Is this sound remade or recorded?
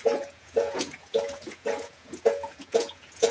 remade